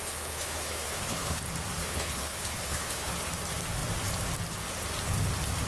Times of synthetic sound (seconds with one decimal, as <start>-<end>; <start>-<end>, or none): 0.0-1.4; 1.8-3.1